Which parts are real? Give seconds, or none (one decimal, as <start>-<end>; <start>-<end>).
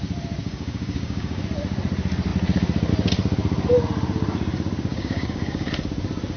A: 0.0-0.4; 1.4-4.9; 5.7-6.4